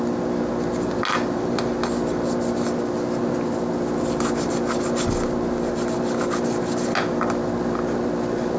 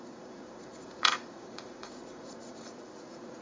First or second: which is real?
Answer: first